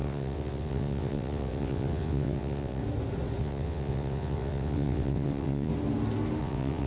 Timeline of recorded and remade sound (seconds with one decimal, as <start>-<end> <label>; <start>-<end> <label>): 0.0-2.8 remade; 2.8-3.4 recorded; 3.4-5.7 remade; 5.7-6.4 recorded; 6.4-6.9 remade